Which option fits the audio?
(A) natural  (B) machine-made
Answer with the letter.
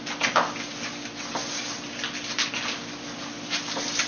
A